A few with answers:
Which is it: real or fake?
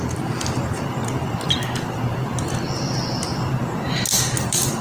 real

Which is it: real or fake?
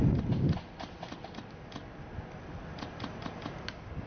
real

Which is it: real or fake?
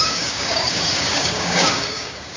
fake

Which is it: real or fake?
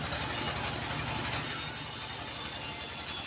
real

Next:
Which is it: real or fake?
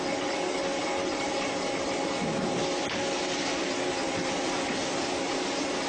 real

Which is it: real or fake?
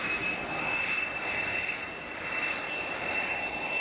real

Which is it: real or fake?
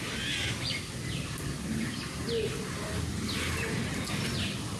real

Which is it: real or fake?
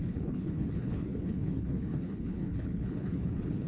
fake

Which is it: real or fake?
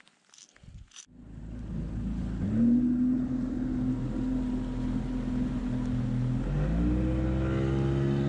real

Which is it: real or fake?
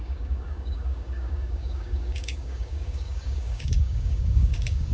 fake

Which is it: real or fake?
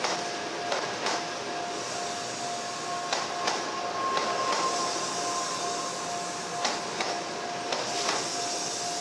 real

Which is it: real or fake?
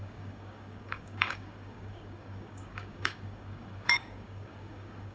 fake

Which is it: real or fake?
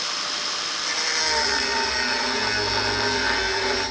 real